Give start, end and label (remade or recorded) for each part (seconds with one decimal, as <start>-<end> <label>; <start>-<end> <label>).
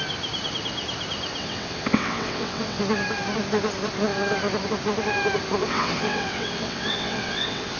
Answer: 0.0-1.4 recorded; 1.4-2.8 remade; 2.8-5.6 recorded; 5.6-7.8 remade